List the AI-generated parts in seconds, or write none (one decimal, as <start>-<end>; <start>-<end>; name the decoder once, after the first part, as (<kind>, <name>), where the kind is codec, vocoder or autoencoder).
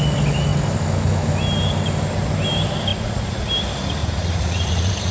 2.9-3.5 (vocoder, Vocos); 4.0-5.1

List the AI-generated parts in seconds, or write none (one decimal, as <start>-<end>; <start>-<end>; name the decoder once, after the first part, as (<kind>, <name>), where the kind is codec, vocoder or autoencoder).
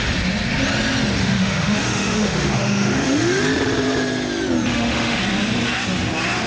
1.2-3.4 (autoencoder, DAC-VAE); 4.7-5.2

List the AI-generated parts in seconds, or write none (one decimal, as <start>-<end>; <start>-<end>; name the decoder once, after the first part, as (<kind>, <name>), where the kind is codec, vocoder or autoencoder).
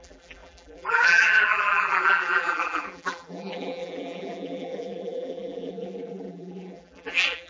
0.0-7.5 (vocoder, BigVGAN v2)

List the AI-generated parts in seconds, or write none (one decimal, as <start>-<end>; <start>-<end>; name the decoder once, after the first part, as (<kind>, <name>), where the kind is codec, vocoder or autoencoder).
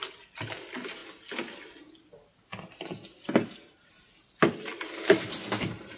none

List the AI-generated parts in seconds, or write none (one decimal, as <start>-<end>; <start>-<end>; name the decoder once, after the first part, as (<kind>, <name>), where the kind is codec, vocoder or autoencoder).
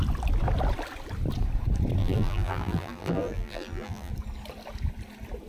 2.0-4.1 (vocoder, BigVGAN v2)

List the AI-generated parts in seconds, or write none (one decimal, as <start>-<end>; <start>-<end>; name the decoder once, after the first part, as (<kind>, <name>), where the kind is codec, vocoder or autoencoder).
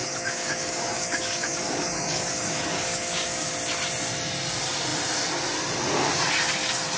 0.0-3.5 (codec, DAC)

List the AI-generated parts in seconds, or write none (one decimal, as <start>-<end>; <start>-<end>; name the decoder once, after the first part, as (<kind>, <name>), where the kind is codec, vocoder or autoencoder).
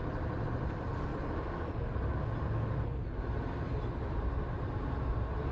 0.0-1.1 (vocoder, BigVGAN v2); 3.1-5.5